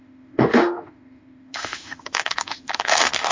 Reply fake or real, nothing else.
fake